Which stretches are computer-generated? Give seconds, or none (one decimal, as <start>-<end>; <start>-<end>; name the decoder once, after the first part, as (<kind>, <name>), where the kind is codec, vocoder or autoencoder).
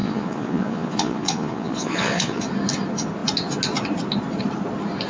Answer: 0.0-2.4 (vocoder, Vocos)